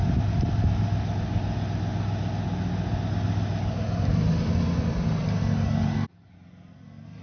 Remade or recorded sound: recorded